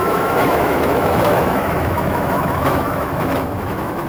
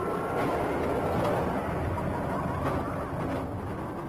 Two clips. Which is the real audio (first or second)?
second